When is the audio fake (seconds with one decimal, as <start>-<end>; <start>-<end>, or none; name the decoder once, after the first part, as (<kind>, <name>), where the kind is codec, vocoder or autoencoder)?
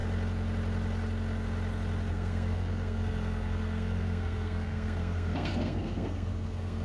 2.1-6.8 (codec, SNAC)